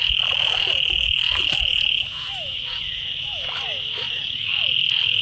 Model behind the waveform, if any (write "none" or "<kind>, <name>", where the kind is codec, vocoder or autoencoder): autoencoder, DAC-VAE